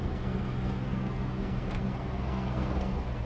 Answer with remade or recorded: remade